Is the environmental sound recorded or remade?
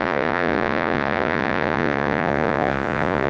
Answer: remade